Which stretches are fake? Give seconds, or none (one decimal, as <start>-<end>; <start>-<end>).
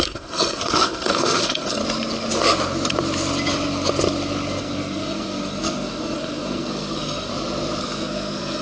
0.0-1.8; 4.6-7.3; 7.8-8.6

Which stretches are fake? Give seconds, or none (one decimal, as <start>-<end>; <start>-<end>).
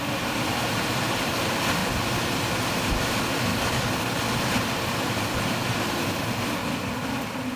3.5-4.2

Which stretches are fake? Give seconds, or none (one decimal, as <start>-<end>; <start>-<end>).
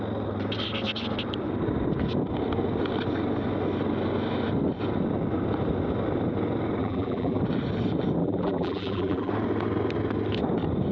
6.8-7.4; 8.2-9.3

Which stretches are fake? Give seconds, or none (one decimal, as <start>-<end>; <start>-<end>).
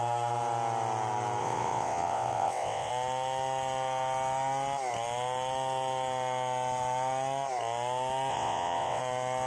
1.4-2.9; 8.3-9.0